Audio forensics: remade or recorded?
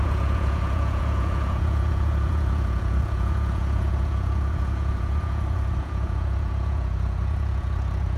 remade